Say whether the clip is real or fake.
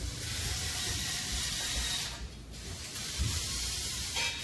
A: real